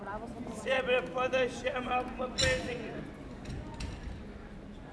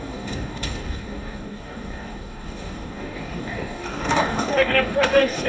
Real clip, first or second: first